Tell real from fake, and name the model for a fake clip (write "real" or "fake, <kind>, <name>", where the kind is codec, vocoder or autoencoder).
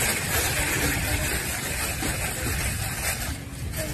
real